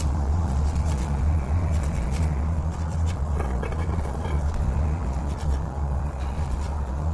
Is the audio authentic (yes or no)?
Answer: no